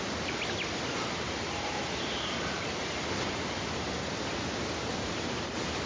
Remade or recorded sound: recorded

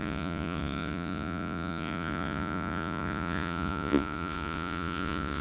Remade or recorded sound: remade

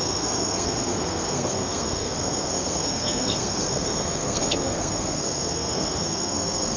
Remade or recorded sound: remade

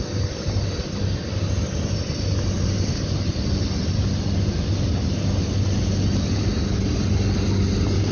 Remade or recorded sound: recorded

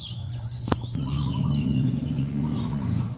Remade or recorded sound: remade